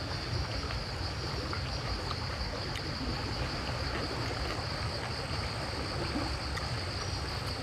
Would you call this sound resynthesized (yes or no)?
no